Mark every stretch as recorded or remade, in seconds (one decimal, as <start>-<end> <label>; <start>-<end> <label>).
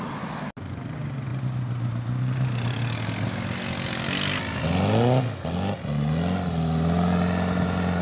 0.0-8.0 recorded